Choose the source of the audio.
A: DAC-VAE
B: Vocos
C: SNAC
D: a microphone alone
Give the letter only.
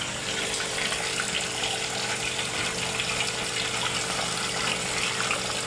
D